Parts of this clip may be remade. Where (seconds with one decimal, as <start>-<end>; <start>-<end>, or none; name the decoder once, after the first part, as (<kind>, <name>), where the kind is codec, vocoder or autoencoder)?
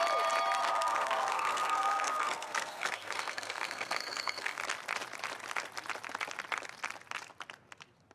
0.6-4.6 (codec, SNAC)